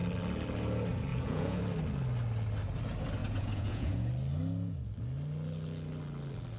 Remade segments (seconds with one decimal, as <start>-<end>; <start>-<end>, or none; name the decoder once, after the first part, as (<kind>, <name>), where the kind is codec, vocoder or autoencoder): 1.1-1.6 (vocoder, Vocos); 3.2-4.1